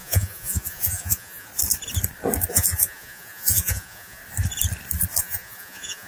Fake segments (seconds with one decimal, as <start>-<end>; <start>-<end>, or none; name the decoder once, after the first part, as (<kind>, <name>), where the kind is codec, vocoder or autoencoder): 0.0-1.5 (vocoder, Vocos); 2.5-4.2; 5.2-6.1